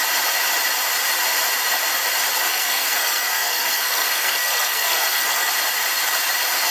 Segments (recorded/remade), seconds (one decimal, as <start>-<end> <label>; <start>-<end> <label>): 0.0-2.5 recorded; 2.5-5.5 remade; 5.5-6.7 recorded